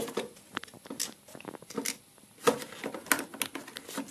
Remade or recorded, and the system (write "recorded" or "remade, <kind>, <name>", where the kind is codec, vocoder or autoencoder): recorded